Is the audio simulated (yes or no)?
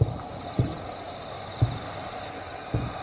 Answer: no